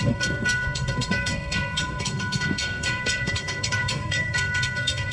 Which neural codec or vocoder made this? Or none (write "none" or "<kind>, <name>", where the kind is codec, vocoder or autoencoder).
codec, SNAC